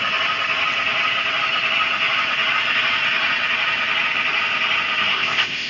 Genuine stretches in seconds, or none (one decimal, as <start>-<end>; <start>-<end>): 0.0-5.1